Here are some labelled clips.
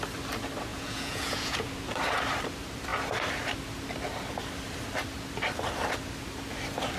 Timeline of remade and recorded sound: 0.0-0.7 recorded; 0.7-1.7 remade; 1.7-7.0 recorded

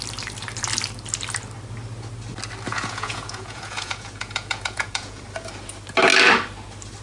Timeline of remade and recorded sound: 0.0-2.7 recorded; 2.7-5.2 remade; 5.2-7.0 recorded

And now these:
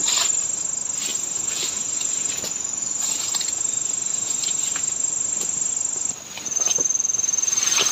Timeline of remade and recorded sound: 0.0-1.1 recorded; 1.1-5.7 remade; 5.7-7.9 recorded